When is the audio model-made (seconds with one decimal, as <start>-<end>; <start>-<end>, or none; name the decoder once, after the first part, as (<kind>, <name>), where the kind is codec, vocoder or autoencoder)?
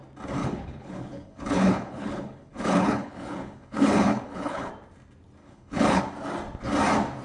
0.4-4.7 (codec, HILCodec); 5.4-6.0